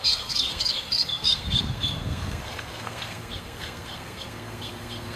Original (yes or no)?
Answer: no